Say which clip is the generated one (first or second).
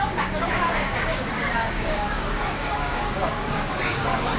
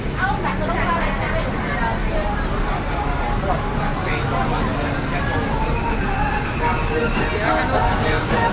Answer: first